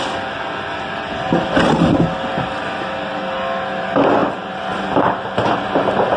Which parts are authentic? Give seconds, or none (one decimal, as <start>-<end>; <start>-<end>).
0.0-6.2